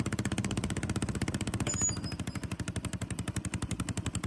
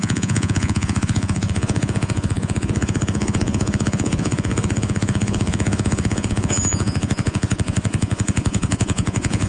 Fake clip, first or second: second